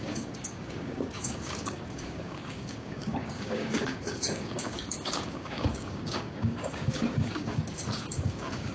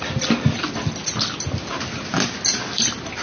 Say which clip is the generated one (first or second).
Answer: first